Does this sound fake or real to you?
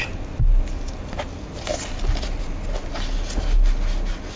real